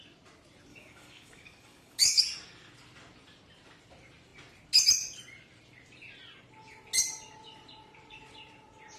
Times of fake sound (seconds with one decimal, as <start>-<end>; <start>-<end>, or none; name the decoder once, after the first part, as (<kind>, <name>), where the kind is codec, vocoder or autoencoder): 0.7-2.2 (codec, DAC)